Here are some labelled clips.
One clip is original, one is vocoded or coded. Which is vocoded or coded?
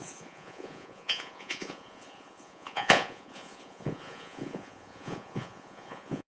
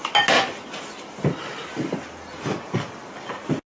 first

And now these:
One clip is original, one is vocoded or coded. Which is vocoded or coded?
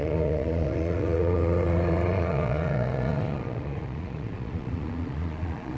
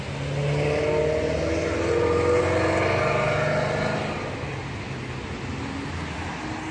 first